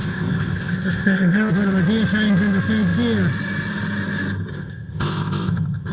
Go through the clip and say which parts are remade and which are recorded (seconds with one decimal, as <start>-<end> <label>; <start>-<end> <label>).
0.0-1.5 remade; 1.5-4.5 recorded; 4.5-5.9 remade